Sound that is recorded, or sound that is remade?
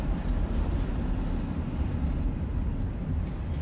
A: recorded